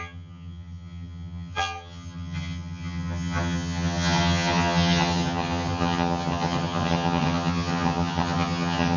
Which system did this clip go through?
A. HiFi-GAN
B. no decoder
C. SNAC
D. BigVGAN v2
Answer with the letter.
A